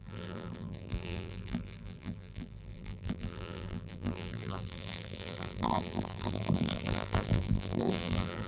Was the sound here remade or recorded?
remade